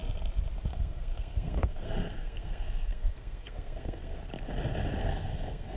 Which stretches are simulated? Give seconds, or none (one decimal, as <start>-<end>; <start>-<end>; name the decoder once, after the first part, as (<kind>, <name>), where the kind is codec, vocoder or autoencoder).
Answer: 0.7-4.2 (codec, SNAC); 5.0-5.8